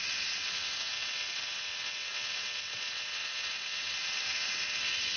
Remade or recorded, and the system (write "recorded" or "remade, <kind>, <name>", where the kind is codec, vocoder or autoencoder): remade, vocoder, WaveNeXt